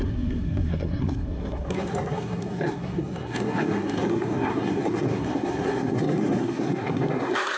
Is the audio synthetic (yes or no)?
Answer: yes